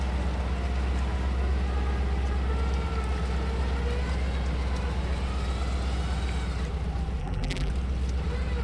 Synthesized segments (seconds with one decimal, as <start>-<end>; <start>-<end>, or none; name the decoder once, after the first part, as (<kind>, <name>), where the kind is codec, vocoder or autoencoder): 7.2-7.7 (vocoder, BigVGAN v2)